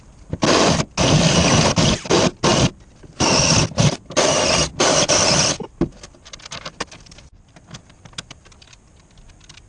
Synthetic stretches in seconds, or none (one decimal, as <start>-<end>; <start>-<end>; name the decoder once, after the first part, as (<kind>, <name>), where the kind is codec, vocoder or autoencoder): none